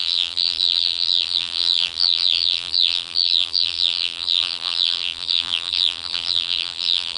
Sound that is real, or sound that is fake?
fake